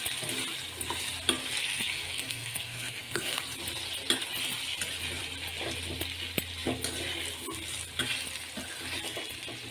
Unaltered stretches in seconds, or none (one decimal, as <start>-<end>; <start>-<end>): 0.0-1.6; 3.4-9.7